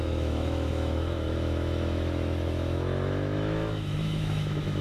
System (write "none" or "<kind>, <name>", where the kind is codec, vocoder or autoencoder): autoencoder, DAC-VAE